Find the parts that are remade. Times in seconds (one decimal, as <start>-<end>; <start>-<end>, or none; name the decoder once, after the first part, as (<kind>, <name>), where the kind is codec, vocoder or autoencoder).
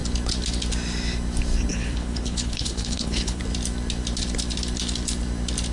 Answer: 1.7-3.4 (codec, HILCodec)